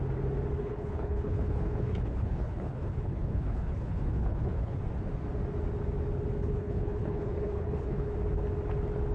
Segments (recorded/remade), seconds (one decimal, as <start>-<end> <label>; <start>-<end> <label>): 0.0-0.6 recorded; 0.6-4.8 remade; 4.8-6.4 recorded; 6.4-8.1 remade; 8.1-9.1 recorded